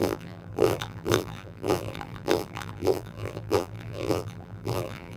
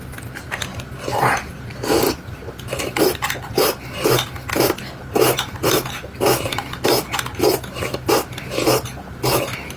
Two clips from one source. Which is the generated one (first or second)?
first